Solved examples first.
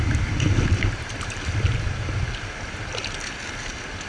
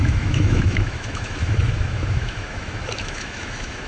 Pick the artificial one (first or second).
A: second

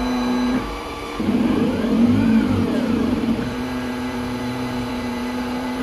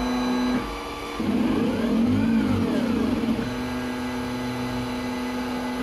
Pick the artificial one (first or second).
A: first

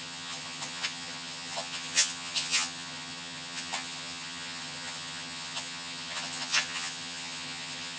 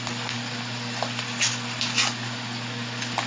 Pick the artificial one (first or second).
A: first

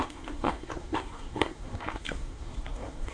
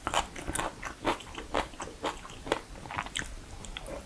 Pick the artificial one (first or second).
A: first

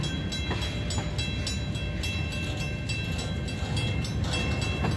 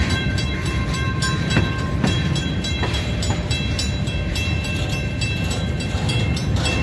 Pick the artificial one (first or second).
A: second